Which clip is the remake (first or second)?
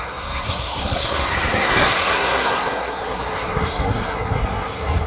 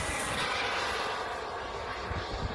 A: first